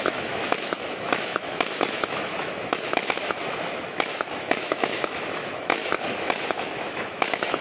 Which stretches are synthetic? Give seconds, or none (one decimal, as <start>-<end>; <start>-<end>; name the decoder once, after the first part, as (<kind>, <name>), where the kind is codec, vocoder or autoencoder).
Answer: 0.0-7.6 (autoencoder, DAC-VAE)

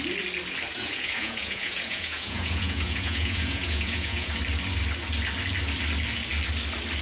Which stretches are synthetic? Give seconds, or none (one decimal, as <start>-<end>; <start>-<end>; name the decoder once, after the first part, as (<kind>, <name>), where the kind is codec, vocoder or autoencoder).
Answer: 0.7-4.3 (vocoder, Vocos)

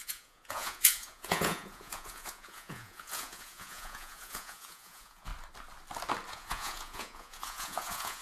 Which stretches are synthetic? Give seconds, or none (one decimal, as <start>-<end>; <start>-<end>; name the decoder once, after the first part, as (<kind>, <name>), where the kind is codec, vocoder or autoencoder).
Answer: 0.0-5.3 (vocoder, Vocos); 6.3-8.2

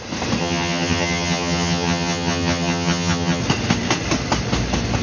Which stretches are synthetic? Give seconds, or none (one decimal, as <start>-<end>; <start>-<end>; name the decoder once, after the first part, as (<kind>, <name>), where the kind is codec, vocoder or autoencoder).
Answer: 0.4-3.4 (vocoder, HiFi-GAN)

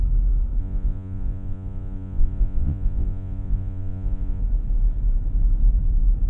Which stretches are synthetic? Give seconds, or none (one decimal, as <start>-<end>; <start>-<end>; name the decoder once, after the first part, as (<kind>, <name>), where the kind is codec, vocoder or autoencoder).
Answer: 0.6-4.4 (vocoder, Vocos)

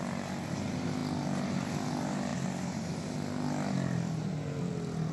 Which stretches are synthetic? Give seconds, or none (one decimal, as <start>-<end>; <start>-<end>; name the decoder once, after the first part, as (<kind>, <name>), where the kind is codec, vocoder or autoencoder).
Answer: none

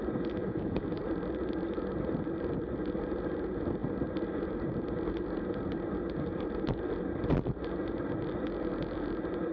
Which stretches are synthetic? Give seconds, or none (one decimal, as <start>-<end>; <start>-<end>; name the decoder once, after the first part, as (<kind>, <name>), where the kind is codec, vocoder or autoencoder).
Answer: 0.4-1.0 (autoencoder, DAC-VAE)